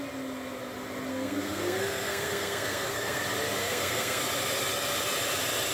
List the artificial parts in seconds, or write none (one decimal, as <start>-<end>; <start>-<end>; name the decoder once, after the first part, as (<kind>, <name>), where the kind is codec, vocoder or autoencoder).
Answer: 1.1-3.2 (codec, SNAC); 3.6-4.2